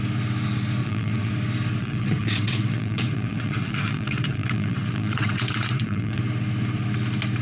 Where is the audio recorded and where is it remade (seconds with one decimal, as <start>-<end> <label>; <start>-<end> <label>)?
0.0-0.8 recorded; 0.8-1.3 remade; 1.3-1.8 recorded; 1.8-6.2 remade; 6.2-7.4 recorded